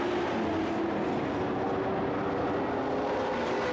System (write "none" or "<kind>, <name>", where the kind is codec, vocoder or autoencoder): none